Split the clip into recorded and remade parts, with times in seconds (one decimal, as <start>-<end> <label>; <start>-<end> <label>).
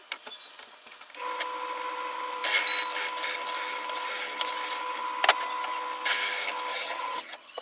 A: 0.0-6.7 recorded; 6.7-7.6 remade